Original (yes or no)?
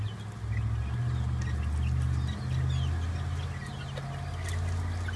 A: yes